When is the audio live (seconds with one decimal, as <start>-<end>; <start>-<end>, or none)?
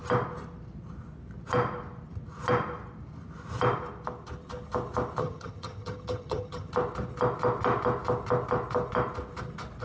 0.0-5.2; 6.7-9.8